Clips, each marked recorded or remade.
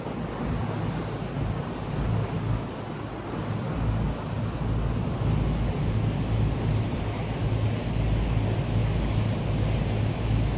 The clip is recorded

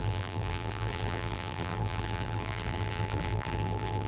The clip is remade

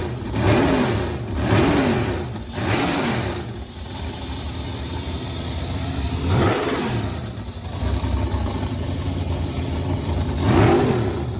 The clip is remade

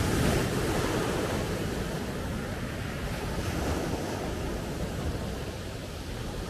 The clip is remade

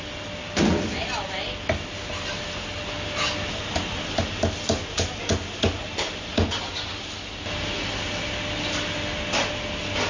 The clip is recorded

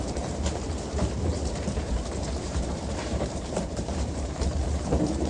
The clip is remade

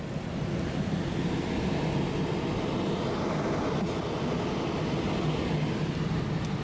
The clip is recorded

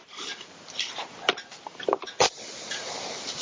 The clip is remade